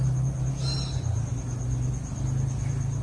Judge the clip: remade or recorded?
recorded